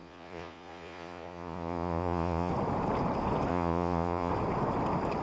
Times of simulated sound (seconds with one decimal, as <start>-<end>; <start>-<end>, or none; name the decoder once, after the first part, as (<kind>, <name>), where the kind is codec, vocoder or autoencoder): 0.0-2.5 (vocoder, Vocos); 3.5-4.3